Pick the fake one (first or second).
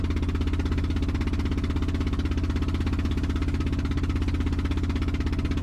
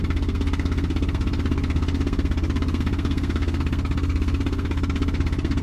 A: second